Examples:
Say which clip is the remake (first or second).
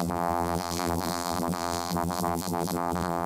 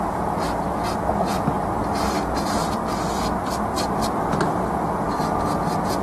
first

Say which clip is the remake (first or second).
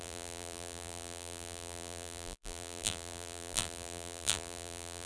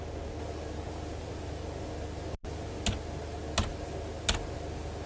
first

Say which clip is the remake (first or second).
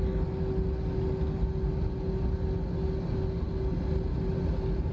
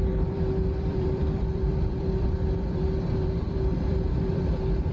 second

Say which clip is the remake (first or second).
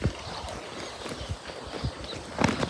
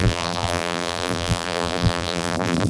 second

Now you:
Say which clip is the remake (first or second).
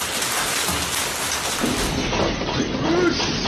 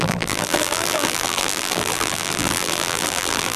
second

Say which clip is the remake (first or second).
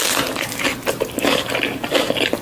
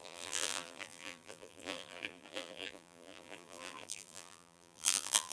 second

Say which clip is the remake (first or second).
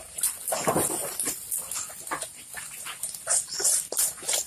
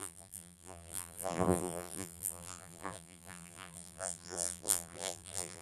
second